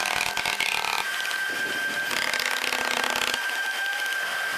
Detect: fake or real real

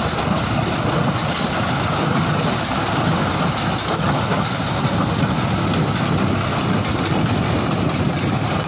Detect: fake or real real